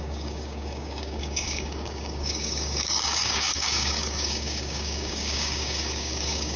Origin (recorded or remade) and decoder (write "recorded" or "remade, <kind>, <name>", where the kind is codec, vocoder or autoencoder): remade, codec, DAC